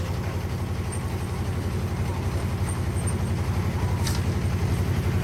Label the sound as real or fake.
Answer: real